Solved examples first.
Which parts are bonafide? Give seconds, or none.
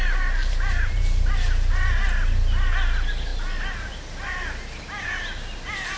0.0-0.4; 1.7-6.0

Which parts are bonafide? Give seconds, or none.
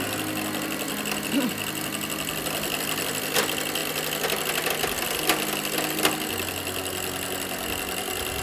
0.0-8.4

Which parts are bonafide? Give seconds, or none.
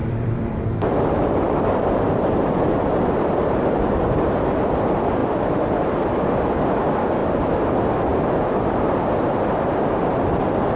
4.7-5.2; 6.1-10.8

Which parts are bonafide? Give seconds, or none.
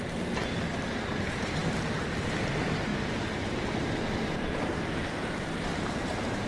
2.9-3.5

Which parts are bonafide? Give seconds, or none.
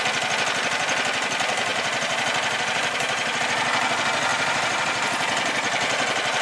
0.0-1.7; 3.4-4.3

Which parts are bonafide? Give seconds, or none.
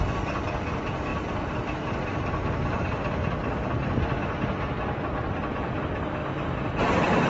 0.0-7.3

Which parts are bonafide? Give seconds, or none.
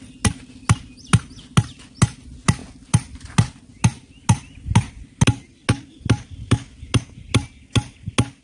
0.0-8.4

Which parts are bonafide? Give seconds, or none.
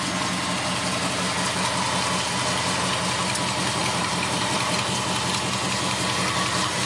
0.0-3.8; 4.9-6.9